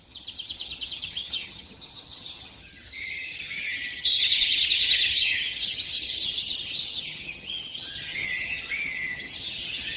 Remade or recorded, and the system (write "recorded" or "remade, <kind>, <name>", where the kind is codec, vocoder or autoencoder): remade, vocoder, HiFi-GAN